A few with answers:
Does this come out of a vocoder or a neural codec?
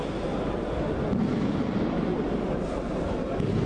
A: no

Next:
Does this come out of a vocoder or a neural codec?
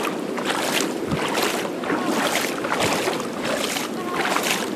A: no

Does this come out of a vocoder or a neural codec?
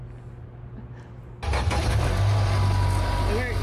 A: no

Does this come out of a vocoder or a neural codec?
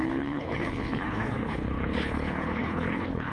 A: yes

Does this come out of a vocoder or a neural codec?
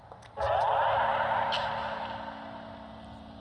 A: no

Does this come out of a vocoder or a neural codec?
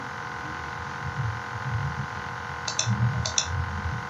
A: no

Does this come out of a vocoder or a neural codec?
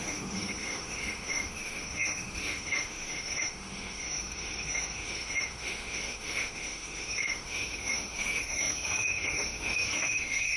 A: yes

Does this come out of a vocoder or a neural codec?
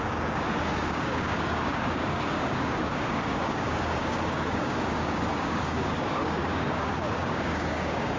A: yes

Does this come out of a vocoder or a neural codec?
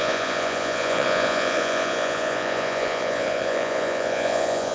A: yes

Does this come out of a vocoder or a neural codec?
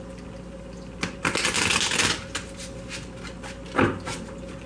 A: no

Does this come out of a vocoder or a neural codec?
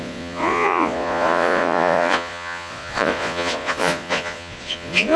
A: yes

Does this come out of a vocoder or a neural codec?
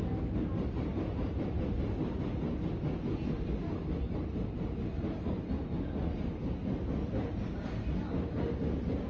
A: no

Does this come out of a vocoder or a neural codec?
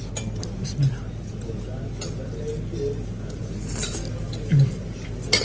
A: no